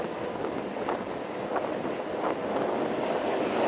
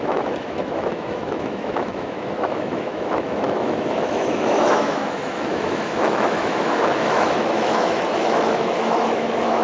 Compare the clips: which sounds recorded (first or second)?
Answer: first